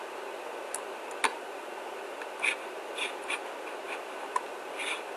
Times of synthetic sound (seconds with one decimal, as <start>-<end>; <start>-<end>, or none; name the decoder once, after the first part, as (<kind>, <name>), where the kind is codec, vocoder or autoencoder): none